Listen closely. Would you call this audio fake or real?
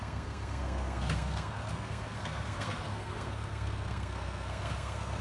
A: fake